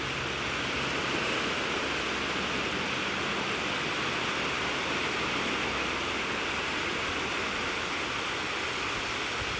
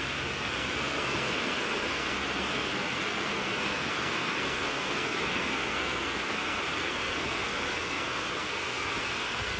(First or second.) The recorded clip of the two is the first